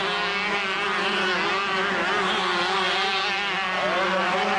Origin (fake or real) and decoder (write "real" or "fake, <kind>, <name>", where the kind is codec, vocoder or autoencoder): real